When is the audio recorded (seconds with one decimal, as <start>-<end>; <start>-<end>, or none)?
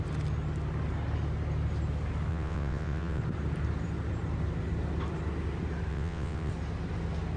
0.0-2.3; 3.2-5.9; 6.5-7.4